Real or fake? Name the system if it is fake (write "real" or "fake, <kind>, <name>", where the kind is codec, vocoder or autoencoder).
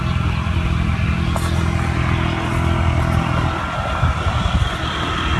real